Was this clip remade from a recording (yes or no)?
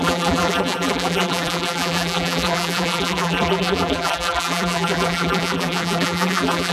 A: yes